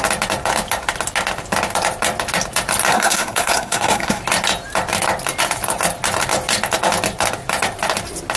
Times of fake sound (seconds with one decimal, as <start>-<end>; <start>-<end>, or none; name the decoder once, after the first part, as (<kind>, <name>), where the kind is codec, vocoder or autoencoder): 2.9-4.2 (codec, SNAC)